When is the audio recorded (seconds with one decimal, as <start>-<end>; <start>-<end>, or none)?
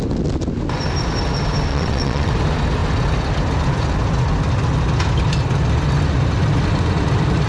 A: 0.0-1.7; 2.3-7.5